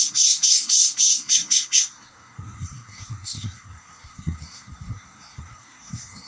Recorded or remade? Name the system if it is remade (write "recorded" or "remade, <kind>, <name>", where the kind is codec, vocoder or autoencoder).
remade, codec, SNAC